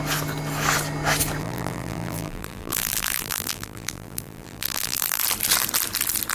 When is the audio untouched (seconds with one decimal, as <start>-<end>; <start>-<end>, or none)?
0.0-1.4; 5.2-6.3